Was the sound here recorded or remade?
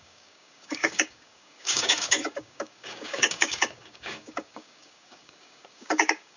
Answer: remade